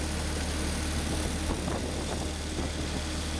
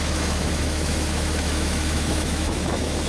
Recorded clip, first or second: first